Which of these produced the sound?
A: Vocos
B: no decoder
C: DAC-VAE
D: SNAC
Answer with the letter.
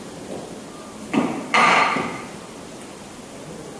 B